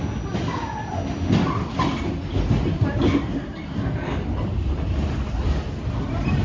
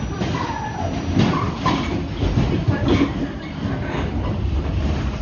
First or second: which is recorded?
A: first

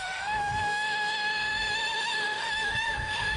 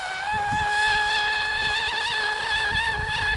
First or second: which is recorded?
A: second